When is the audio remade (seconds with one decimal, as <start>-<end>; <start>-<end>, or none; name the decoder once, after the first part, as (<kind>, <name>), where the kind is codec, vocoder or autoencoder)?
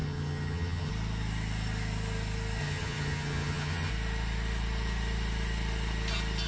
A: 0.0-0.9 (vocoder, HiFi-GAN); 2.6-3.9